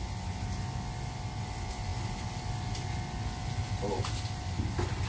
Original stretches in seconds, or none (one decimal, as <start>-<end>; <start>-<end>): 0.0-5.1